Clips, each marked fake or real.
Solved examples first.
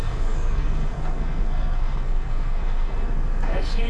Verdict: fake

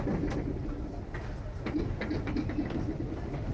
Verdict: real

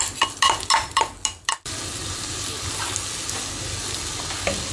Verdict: real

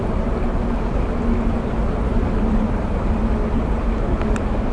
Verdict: real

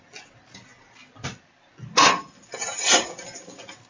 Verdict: real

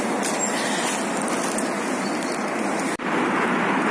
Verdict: real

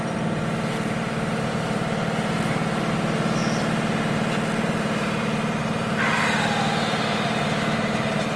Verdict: real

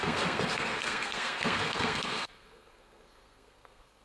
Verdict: fake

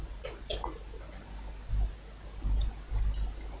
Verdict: real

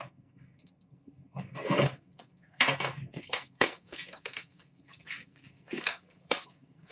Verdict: fake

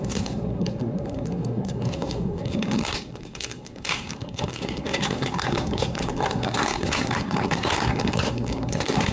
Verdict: fake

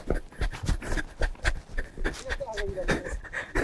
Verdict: real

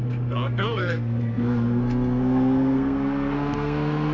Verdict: fake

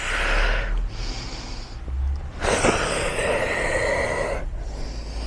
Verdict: real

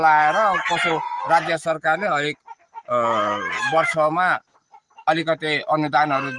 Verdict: real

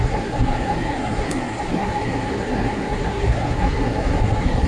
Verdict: fake